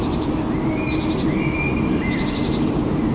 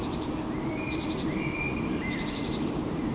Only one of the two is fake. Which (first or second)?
second